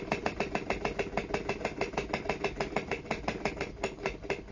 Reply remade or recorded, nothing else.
recorded